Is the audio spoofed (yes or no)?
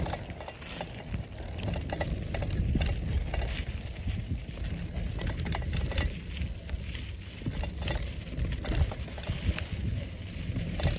no